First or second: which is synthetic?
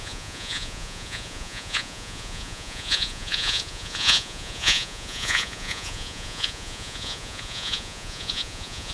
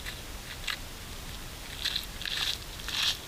first